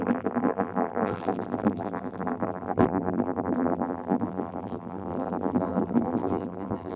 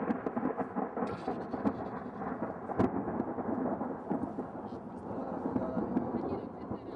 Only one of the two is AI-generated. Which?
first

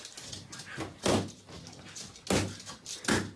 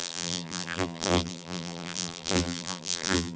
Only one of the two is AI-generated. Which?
second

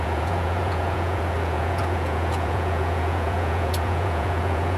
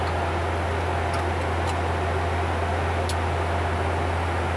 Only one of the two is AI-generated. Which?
first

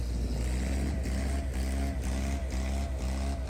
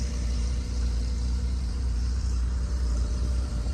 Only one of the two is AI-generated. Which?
second